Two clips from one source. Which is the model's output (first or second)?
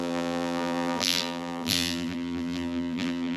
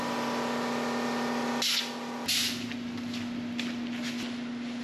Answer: first